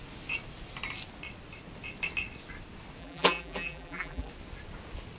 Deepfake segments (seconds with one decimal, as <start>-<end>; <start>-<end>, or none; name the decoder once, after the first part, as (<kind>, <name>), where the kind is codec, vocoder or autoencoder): 3.0-4.3 (vocoder, BigVGAN v2)